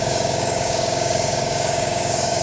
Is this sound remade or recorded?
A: remade